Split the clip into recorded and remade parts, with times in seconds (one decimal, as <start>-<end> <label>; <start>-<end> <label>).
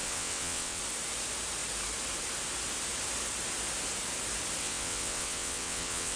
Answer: 0.0-0.8 remade; 0.8-4.6 recorded; 4.6-6.2 remade